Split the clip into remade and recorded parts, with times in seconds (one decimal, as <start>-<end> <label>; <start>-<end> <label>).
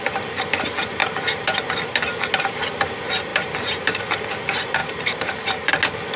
0.0-1.0 recorded; 1.0-1.8 remade; 1.8-3.3 recorded; 3.3-4.0 remade; 4.0-4.8 recorded; 4.8-5.7 remade; 5.7-6.2 recorded